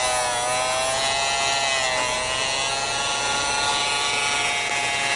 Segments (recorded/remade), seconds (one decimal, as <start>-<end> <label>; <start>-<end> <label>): 0.0-5.2 recorded